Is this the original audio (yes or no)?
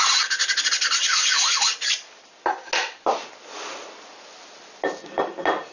yes